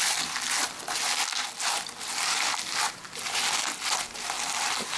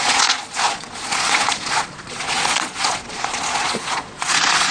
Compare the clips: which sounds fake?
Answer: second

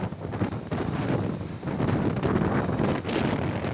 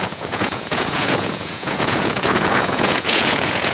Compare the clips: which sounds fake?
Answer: second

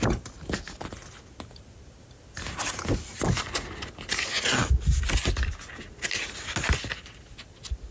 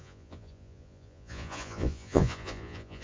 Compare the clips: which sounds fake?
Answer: second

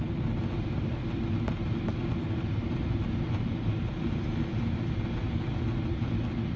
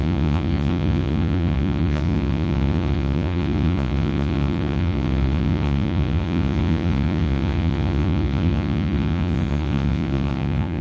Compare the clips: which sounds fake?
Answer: second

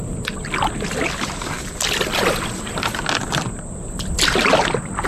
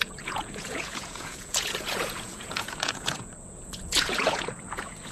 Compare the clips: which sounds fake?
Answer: second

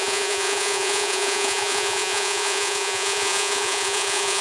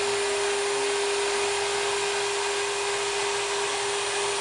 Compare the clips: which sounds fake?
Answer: first